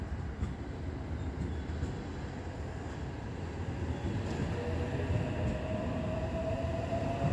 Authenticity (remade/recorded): recorded